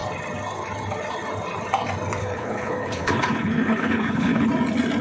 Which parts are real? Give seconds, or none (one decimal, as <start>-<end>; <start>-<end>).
0.0-2.2; 4.5-5.0